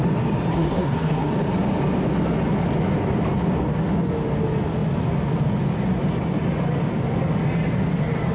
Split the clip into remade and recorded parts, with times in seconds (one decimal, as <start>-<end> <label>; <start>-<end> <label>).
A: 0.0-0.5 recorded; 0.5-1.3 remade; 1.3-8.3 recorded